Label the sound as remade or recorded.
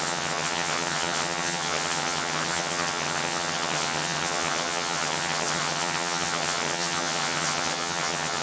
remade